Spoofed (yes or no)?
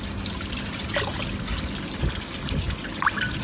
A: no